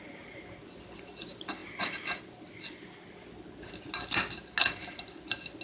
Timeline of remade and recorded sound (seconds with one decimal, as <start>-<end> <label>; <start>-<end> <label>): 0.0-5.6 recorded